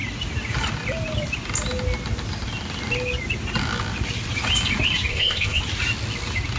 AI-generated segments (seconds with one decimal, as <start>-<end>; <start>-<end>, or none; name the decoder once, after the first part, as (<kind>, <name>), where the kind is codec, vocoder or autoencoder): 5.1-5.6 (codec, ZipCodec)